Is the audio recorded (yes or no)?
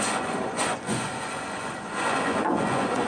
no